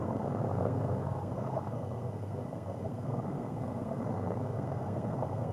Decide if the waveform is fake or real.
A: fake